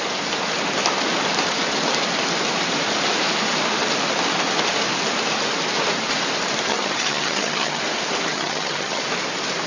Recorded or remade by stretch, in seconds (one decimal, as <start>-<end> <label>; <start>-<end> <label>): 0.0-6.7 recorded; 6.7-7.8 remade; 7.8-8.3 recorded; 8.3-9.0 remade; 9.0-9.7 recorded